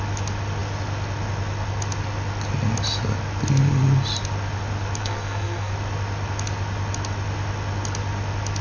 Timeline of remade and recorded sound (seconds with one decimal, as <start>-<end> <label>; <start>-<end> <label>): 0.0-5.0 recorded; 5.0-5.7 remade; 5.7-8.6 recorded